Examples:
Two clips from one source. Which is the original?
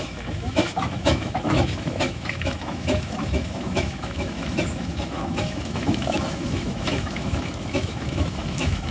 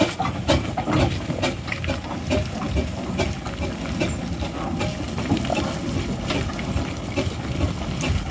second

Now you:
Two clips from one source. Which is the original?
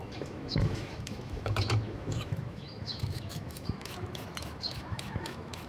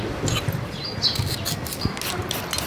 second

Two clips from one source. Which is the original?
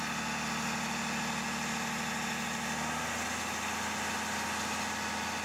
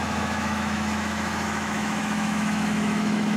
first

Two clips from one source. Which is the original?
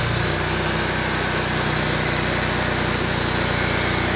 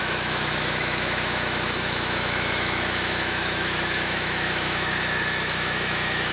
first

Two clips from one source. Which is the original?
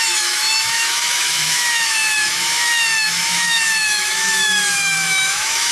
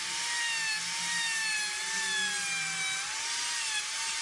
second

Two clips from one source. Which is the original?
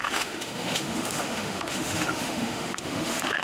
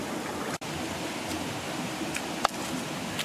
second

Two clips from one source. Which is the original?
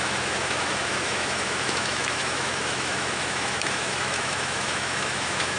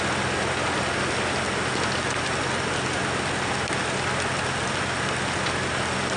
second